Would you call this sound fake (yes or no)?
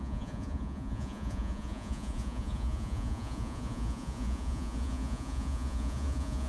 yes